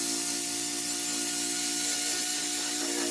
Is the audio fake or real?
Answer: real